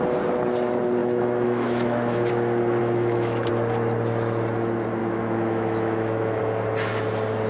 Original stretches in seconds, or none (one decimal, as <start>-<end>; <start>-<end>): 0.0-1.0; 2.3-2.8; 3.5-5.0; 6.4-7.5

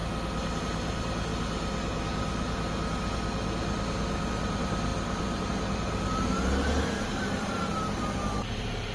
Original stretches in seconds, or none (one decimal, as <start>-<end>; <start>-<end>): 0.0-0.6; 1.3-4.3

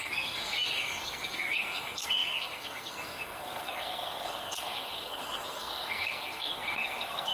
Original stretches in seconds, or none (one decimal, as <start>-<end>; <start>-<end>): none

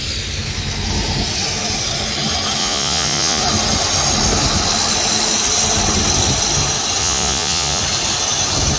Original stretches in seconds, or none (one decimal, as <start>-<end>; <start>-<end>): 0.0-2.6; 3.4-7.0; 7.8-8.8

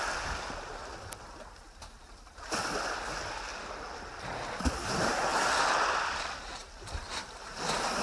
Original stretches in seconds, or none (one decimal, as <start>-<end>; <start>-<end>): 0.0-8.0

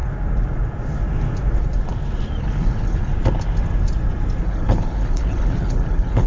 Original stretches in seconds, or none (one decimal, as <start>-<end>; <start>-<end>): 0.0-2.4; 3.1-4.4